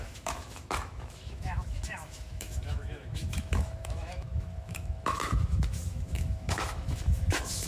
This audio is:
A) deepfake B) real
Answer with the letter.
A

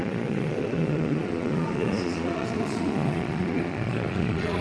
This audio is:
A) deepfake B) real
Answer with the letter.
A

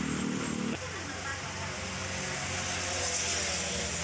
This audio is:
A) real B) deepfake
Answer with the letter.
A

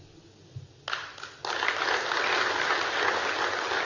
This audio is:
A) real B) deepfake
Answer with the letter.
A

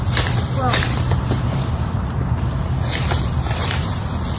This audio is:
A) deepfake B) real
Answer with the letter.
A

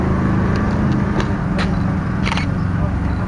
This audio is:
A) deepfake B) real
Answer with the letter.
B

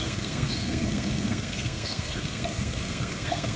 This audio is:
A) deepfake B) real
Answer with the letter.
A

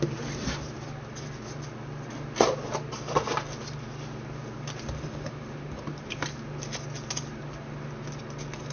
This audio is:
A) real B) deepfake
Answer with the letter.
A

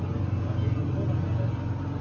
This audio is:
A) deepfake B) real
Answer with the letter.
B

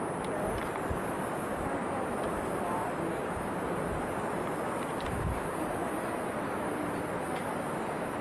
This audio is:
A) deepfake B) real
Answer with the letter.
A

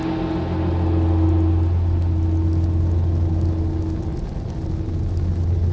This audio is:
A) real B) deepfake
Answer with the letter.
A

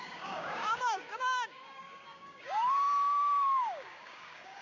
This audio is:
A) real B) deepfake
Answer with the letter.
B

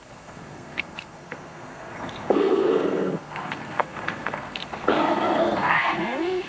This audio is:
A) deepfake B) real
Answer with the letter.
A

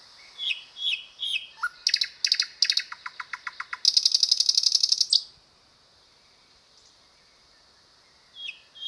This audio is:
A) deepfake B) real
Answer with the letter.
B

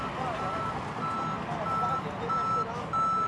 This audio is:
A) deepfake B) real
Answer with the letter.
B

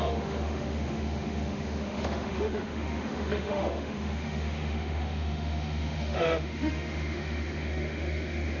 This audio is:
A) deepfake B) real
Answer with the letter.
A